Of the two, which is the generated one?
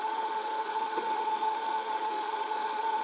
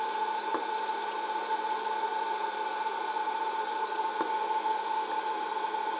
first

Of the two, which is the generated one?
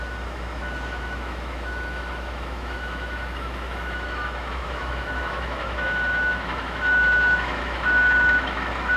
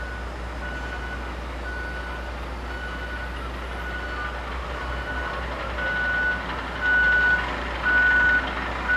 first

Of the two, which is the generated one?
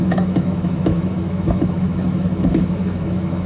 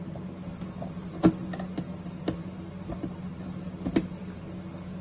first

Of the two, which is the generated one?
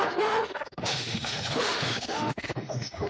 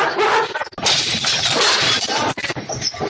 first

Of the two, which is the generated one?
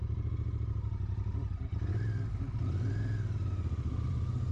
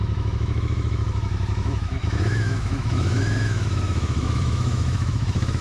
second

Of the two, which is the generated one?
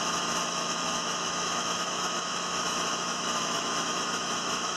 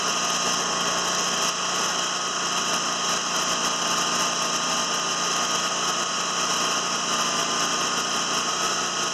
first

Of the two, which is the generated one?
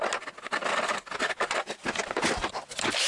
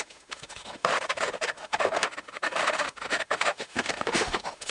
second